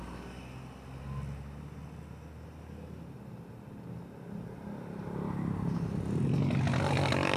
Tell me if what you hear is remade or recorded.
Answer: recorded